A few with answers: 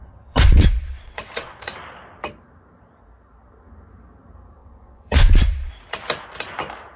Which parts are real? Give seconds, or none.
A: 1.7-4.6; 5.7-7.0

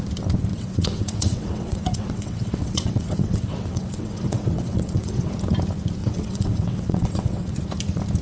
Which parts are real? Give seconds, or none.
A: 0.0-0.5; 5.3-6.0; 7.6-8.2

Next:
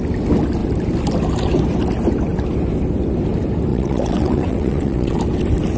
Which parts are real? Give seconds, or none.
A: 0.0-3.7; 5.2-5.8

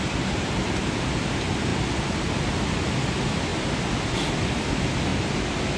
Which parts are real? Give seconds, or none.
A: 0.0-5.8

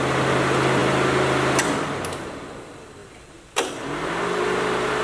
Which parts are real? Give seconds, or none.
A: 0.0-5.0